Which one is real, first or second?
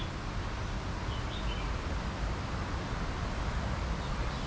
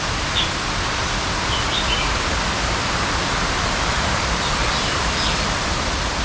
first